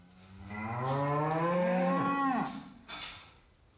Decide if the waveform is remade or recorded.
recorded